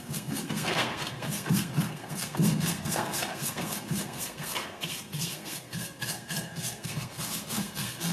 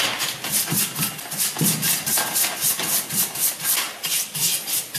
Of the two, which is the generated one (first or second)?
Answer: first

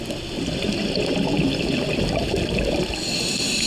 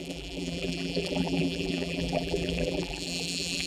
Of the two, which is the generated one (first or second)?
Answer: second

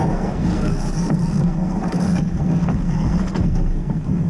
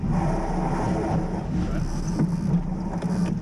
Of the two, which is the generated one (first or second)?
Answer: first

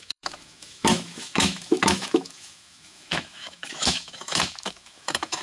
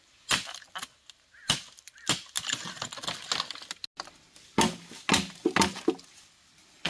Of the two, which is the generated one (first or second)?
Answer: first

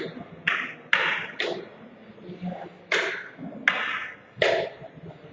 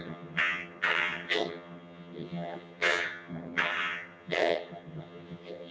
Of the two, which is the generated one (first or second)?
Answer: second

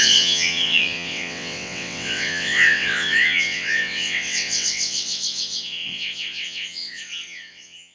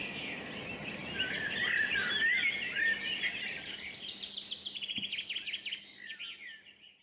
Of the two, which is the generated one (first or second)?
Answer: first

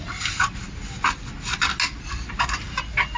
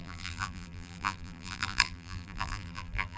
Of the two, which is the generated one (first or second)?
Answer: second